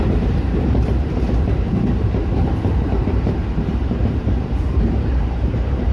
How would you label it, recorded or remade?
remade